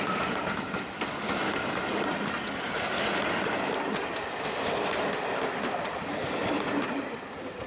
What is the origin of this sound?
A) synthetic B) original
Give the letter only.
B